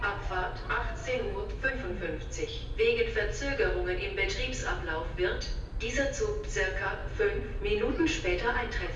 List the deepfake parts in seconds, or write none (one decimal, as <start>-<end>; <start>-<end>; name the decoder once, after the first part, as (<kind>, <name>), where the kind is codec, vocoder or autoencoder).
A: 1.0-1.7 (autoencoder, DAC-VAE)